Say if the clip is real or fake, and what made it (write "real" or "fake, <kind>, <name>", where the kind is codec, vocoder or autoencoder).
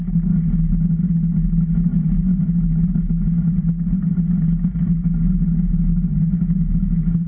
real